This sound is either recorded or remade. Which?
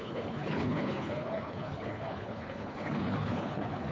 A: remade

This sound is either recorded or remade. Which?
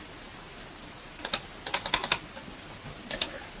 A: recorded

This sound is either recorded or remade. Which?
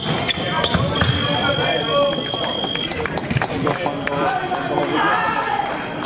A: recorded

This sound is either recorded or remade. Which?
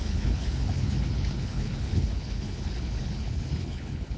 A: remade